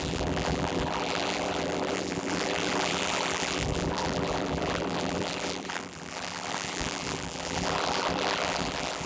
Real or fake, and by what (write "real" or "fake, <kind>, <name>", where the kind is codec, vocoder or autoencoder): fake, vocoder, BigVGAN v2